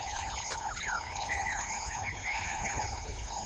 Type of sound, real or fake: fake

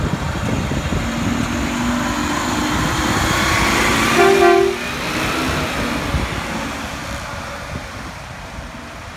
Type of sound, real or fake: real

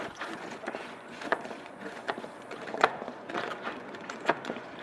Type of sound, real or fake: fake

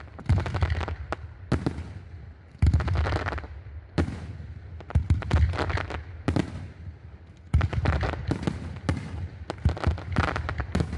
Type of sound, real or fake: real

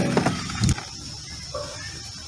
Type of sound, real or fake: real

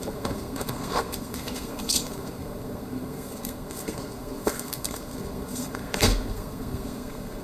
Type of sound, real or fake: fake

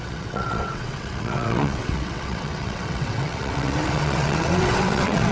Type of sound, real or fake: fake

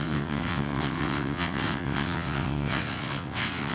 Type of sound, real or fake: fake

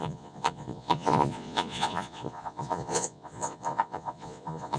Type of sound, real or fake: fake